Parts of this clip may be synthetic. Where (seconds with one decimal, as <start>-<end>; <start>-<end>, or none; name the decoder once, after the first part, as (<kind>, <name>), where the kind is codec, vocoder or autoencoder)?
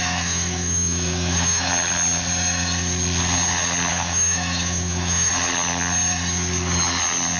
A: 0.0-1.7 (autoencoder, DAC-VAE); 3.9-5.3